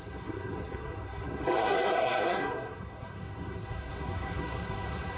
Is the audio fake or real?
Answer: fake